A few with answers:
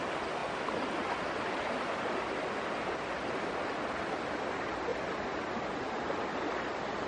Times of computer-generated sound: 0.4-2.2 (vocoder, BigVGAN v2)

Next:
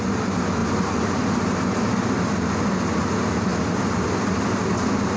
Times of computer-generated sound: 0.6-2.1 (vocoder, BigVGAN v2)

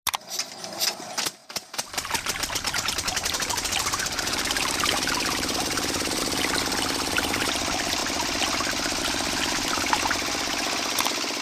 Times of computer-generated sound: 1.4-6.2 (vocoder, BigVGAN v2)

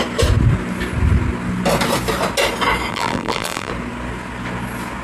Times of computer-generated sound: 2.9-3.7 (vocoder, BigVGAN v2)

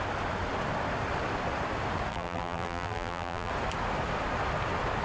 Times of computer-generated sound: 2.1-3.5 (vocoder, BigVGAN v2)

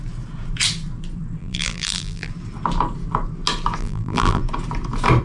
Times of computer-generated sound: 1.4-2.3 (vocoder, BigVGAN v2); 3.8-4.4

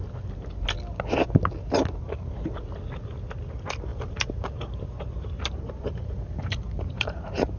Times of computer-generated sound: 3.9-7.6 (vocoder, BigVGAN v2)

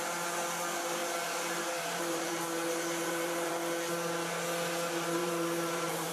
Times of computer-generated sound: 1.0-3.5 (vocoder, BigVGAN v2); 5.2-6.1